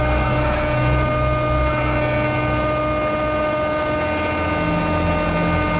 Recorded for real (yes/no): yes